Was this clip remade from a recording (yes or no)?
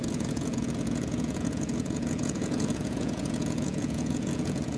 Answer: yes